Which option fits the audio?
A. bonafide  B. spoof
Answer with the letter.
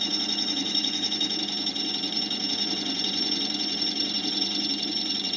B